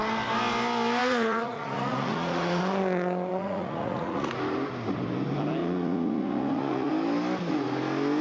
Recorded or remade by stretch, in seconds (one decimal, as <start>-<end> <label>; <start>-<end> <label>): 0.0-1.0 recorded; 1.0-2.6 remade; 2.6-3.3 recorded; 3.3-4.3 remade; 4.3-5.6 recorded; 5.6-6.9 remade; 6.9-8.2 recorded